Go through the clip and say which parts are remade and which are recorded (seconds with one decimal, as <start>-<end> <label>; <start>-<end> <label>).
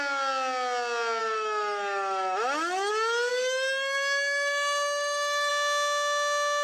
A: 0.0-1.2 recorded; 1.2-2.9 remade; 2.9-3.3 recorded; 3.3-5.5 remade; 5.5-6.6 recorded